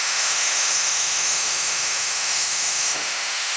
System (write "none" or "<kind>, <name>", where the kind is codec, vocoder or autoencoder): autoencoder, DAC-VAE